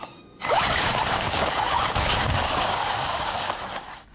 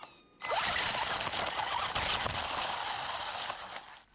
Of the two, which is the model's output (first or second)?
first